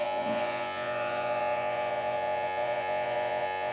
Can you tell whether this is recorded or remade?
remade